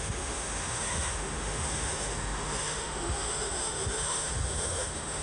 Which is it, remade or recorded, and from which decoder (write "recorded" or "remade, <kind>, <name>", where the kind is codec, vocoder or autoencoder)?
remade, autoencoder, DAC-VAE